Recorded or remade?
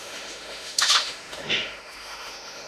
remade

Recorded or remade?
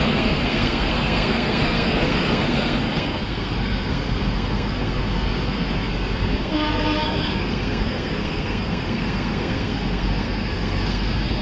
remade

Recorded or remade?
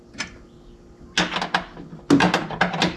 recorded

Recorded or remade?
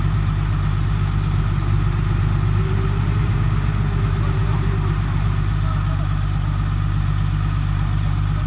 remade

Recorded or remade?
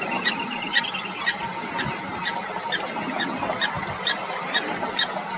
recorded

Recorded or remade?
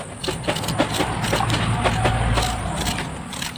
recorded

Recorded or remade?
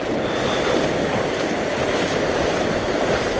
recorded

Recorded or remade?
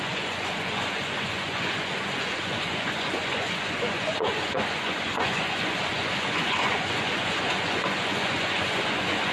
remade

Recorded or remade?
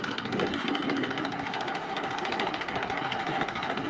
remade